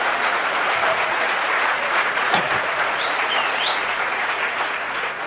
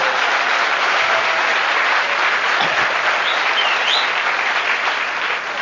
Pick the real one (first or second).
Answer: second